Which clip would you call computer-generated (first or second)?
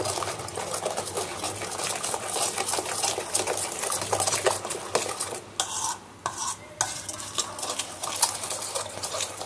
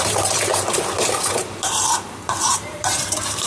second